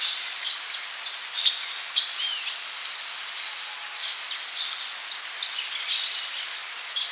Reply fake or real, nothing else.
real